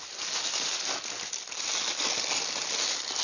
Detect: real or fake real